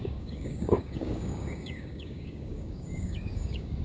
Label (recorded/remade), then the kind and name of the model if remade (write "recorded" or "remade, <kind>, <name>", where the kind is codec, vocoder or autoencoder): remade, codec, DAC